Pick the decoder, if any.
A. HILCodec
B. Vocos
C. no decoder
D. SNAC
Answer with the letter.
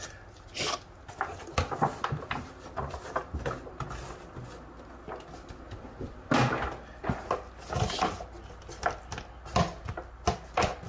C